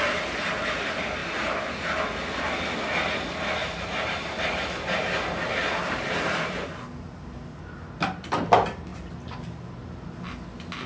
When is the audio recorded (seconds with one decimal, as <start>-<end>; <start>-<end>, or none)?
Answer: 0.0-3.6; 6.7-10.9